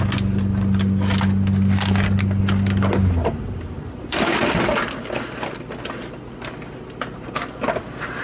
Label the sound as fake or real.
real